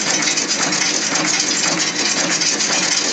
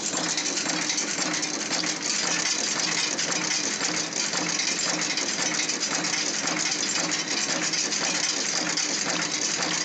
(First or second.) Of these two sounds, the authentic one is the second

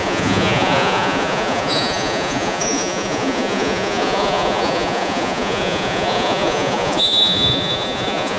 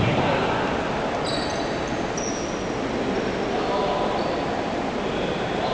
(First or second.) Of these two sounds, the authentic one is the second